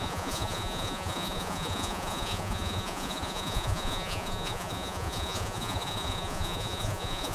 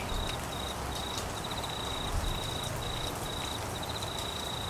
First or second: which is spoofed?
first